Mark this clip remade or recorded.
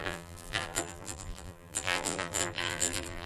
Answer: remade